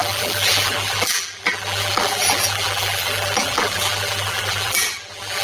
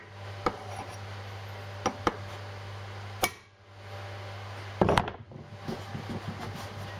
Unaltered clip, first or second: second